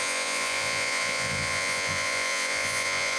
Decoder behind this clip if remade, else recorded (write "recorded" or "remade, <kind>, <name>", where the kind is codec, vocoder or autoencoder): remade, vocoder, Vocos